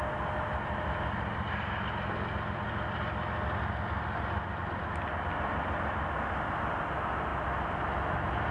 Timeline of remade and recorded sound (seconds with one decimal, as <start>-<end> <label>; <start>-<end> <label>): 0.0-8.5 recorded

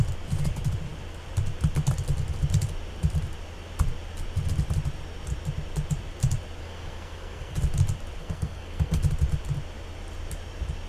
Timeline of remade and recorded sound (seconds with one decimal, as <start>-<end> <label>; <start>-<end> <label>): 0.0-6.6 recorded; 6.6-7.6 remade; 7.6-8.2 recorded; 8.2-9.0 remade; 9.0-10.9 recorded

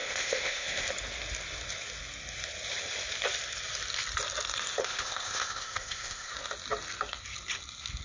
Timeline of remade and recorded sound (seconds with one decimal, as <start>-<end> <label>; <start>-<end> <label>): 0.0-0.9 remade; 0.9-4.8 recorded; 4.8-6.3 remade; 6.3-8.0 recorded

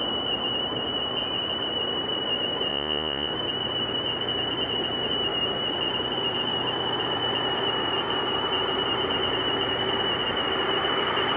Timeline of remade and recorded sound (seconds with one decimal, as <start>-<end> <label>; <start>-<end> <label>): 0.0-2.7 recorded; 2.7-3.3 remade; 3.3-11.4 recorded